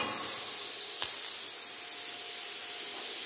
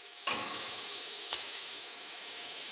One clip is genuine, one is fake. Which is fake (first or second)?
second